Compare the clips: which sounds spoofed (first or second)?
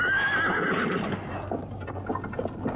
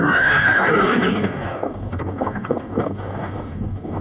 second